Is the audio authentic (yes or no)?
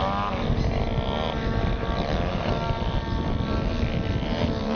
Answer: yes